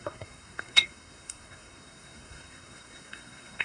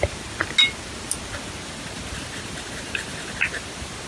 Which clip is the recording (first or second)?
second